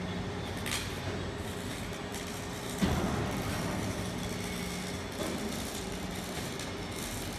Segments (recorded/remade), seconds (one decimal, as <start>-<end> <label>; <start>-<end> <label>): 0.0-7.4 recorded